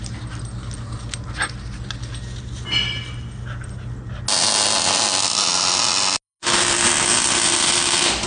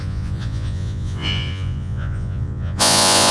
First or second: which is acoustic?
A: first